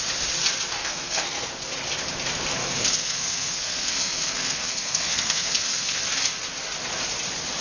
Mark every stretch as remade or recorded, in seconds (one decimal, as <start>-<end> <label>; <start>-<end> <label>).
0.0-0.8 recorded; 0.8-1.5 remade; 1.5-2.6 recorded; 2.6-6.0 remade; 6.0-7.6 recorded